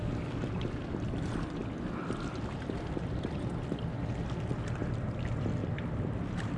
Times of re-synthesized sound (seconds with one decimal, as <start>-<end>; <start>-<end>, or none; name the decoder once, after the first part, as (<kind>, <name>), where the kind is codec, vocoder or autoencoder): 1.6-3.4 (vocoder, BigVGAN v2); 5.6-6.6